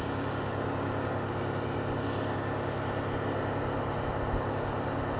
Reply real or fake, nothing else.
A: real